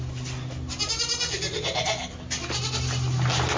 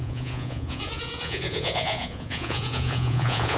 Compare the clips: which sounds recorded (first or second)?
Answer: first